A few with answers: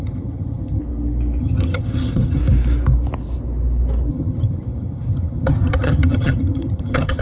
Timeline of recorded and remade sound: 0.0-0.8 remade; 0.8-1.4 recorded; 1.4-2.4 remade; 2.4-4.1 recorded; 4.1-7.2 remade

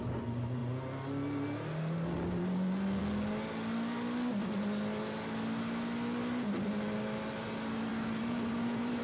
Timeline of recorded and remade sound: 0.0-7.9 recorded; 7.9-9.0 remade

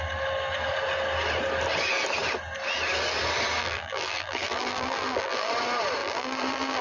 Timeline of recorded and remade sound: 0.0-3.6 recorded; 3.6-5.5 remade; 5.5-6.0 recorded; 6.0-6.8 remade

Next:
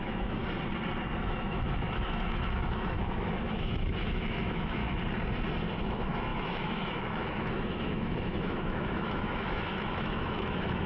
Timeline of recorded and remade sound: 0.0-0.4 remade; 0.4-1.2 recorded; 1.2-4.8 remade; 4.8-5.8 recorded; 5.8-10.9 remade